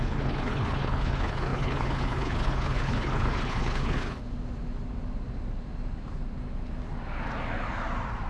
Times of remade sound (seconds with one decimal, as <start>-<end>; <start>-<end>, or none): 0.0-4.2